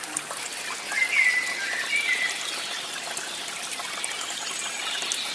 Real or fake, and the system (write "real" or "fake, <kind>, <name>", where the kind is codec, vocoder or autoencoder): real